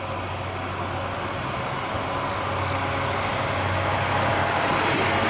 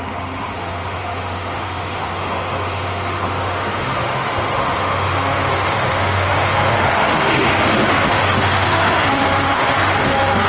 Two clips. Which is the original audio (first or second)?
first